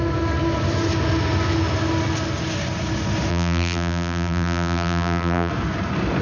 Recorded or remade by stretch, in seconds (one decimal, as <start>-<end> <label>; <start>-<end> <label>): 0.0-3.3 recorded; 3.3-5.5 remade; 5.5-6.2 recorded